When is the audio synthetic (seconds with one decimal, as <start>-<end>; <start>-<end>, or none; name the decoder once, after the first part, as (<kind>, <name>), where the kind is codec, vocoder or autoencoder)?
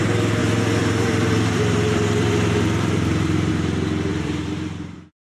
0.4-3.5 (vocoder, BigVGAN v2); 4.1-5.2